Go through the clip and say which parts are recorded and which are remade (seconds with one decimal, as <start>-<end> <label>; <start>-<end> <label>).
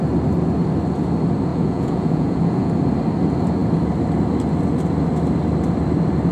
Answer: 0.0-1.5 recorded; 1.5-2.7 remade; 2.7-6.3 recorded